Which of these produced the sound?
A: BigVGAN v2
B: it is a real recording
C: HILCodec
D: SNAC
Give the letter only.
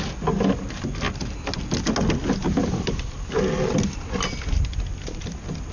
B